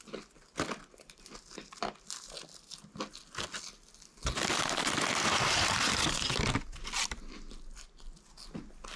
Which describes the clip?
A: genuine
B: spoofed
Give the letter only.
A